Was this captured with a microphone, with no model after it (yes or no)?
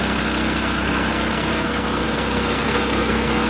no